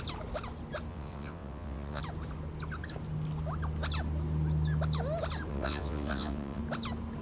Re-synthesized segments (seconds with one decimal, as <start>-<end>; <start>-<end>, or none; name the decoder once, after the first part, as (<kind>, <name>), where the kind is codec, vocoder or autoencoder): 0.9-2.0 (vocoder, WaveNeXt); 5.5-6.6